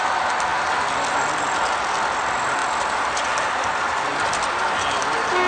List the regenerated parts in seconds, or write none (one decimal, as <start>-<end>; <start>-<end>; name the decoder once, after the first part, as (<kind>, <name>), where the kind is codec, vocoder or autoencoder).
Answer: none